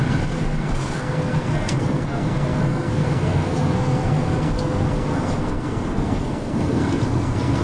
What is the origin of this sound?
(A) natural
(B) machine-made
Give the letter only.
B